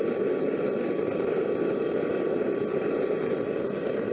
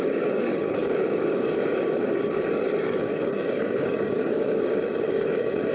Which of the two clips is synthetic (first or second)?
second